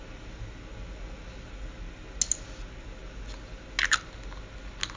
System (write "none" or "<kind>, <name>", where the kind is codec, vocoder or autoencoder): none